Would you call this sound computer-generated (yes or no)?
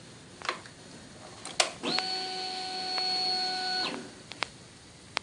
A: no